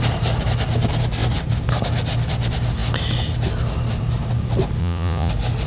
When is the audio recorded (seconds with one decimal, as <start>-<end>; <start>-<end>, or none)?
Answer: 0.0-4.8; 5.3-5.7